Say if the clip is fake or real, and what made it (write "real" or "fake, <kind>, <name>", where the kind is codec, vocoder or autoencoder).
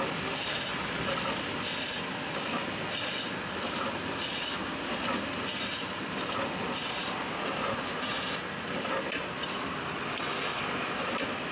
real